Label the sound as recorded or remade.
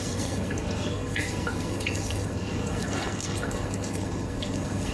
remade